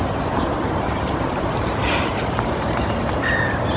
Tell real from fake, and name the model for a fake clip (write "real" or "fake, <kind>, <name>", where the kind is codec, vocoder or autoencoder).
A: fake, vocoder, BigVGAN v2